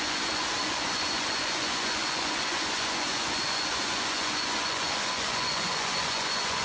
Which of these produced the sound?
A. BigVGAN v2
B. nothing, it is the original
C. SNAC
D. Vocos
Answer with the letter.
D